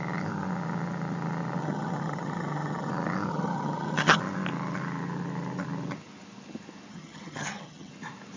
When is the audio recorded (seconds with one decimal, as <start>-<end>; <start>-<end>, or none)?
0.0-1.6; 2.9-3.3; 4.2-6.9; 7.9-8.4